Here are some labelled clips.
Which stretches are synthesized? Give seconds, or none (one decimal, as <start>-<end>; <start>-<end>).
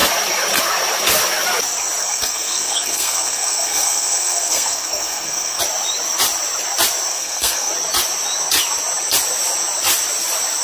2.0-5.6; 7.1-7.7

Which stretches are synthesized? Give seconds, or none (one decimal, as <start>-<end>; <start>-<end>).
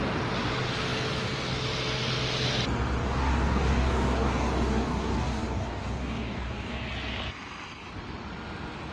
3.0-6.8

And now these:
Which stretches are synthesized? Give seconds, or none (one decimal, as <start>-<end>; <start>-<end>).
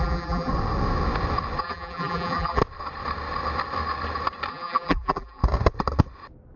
0.0-0.5; 1.6-2.6; 4.5-5.4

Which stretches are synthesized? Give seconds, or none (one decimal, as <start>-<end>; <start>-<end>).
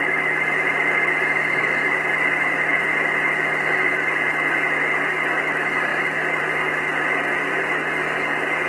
none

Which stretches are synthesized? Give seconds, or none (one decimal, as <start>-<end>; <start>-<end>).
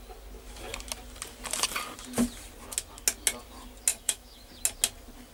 3.9-4.5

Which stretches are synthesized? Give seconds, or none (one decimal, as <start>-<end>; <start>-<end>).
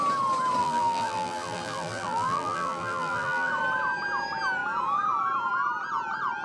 0.6-3.5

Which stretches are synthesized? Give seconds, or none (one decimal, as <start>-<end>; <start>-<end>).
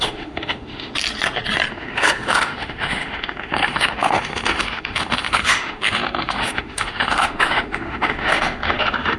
0.0-0.9; 1.7-9.2